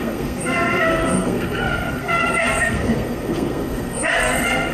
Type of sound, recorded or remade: remade